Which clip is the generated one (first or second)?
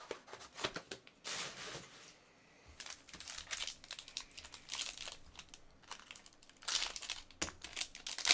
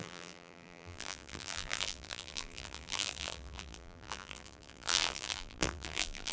second